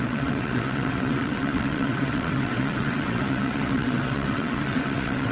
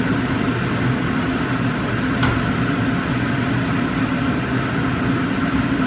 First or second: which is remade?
first